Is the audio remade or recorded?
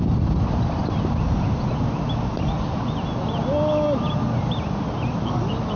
recorded